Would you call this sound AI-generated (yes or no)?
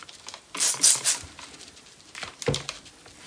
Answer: no